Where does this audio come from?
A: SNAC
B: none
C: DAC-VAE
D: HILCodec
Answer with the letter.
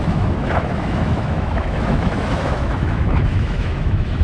C